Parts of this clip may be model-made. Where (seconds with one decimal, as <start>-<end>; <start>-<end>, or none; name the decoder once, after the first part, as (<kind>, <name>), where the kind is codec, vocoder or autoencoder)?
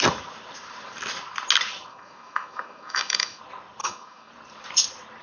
1.9-3.4 (autoencoder, DAC-VAE); 3.8-4.3